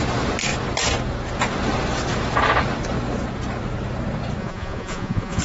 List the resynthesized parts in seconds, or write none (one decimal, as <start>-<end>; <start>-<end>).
4.4-5.4